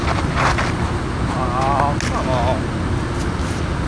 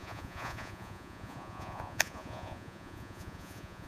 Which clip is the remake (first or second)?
second